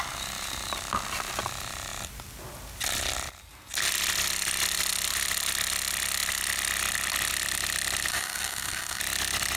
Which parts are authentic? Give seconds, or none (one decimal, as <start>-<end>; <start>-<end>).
0.0-8.1; 9.0-9.6